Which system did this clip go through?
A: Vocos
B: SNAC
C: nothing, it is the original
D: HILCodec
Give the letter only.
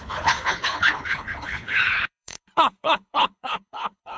D